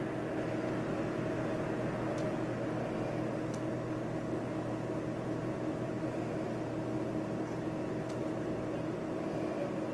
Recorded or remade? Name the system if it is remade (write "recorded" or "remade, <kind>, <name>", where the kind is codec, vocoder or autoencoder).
recorded